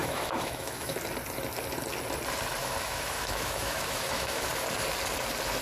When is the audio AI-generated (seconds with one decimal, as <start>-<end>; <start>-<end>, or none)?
0.0-0.9; 2.6-4.5